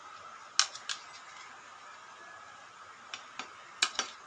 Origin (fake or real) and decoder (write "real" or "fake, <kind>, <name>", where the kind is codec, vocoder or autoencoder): real